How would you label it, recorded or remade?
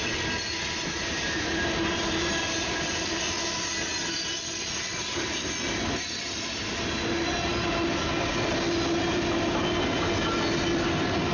recorded